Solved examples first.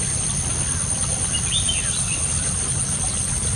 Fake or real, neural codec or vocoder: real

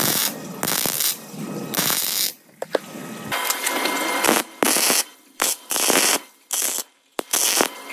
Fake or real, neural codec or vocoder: real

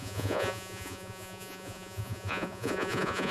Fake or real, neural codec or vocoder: fake, vocoder, Vocos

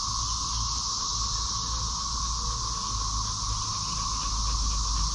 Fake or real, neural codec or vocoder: real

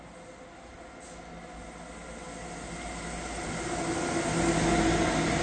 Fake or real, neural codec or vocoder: real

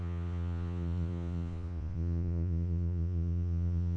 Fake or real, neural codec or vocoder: fake, vocoder, Vocos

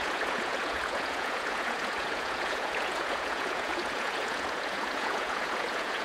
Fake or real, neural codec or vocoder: fake, vocoder, Vocos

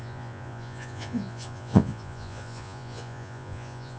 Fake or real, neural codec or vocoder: fake, vocoder, Vocos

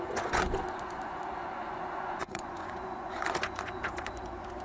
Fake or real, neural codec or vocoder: fake, vocoder, Vocos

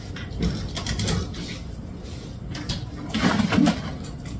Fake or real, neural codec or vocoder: real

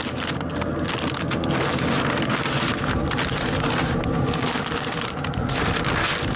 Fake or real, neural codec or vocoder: real